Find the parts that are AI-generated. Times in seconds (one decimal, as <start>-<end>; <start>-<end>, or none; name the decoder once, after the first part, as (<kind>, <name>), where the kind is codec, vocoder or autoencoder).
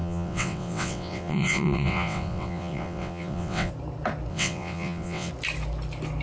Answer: 0.0-3.7 (vocoder, WaveNeXt); 4.3-5.3